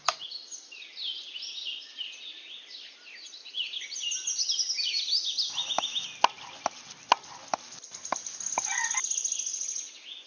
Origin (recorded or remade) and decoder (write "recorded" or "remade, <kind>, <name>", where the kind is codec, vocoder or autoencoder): recorded